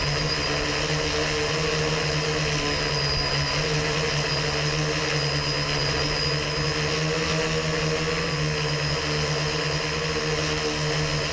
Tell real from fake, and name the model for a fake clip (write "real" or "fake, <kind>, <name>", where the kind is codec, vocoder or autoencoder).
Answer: real